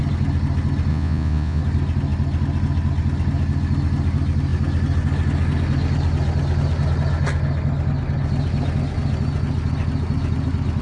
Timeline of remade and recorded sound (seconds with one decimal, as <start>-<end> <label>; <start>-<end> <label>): 0.0-0.9 recorded; 0.9-1.6 remade; 1.6-10.8 recorded